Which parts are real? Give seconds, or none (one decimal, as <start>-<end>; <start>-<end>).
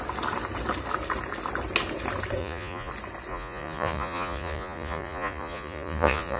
0.0-2.4; 2.9-3.3